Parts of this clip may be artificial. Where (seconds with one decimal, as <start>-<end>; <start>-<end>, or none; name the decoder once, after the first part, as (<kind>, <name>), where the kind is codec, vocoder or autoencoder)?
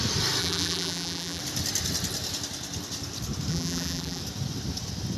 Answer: 0.4-1.4 (vocoder, BigVGAN v2); 3.5-4.2